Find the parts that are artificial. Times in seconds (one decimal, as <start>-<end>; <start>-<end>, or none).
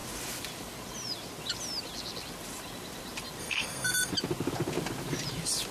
3.4-4.1